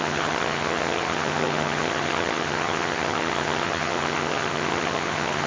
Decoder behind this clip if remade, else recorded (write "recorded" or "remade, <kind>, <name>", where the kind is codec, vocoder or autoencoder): remade, vocoder, HiFi-GAN